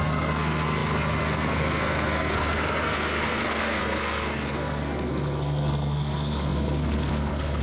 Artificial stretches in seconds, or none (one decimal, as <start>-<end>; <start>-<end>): 0.0-7.6